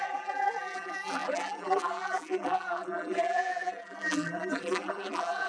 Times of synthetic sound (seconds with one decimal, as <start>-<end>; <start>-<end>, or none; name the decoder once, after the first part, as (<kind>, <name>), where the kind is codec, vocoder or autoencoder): 0.0-5.5 (vocoder, BigVGAN v2)